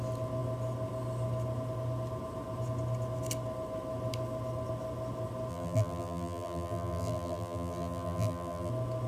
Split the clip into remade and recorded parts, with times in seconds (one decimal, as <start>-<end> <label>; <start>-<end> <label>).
0.0-5.5 recorded; 5.5-8.7 remade; 8.7-9.1 recorded